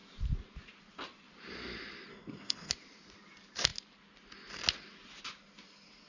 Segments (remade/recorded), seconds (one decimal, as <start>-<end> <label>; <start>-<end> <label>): 0.0-2.1 recorded; 2.1-2.7 remade; 2.7-6.1 recorded